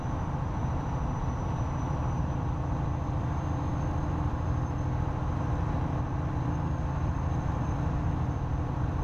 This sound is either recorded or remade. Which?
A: remade